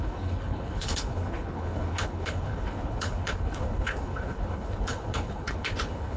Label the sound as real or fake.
fake